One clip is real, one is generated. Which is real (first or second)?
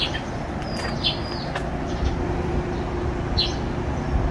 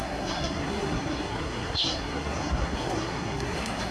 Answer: first